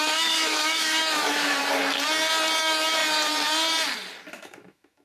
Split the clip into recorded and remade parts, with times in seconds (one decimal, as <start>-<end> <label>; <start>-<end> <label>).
0.0-1.6 remade; 1.6-2.6 recorded; 2.6-3.0 remade; 3.0-4.3 recorded; 4.3-5.0 remade